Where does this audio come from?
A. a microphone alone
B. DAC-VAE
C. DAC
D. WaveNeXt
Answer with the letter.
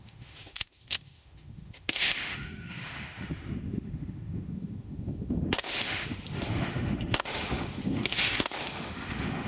B